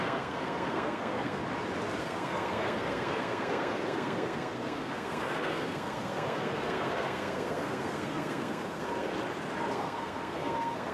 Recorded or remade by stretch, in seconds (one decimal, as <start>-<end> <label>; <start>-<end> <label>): 0.0-1.4 remade; 1.4-2.0 recorded; 2.0-9.1 remade; 9.1-9.7 recorded; 9.7-10.9 remade